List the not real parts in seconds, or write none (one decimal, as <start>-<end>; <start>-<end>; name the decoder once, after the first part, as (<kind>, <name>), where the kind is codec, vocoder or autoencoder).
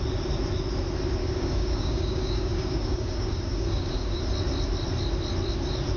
1.2-4.2 (codec, DAC)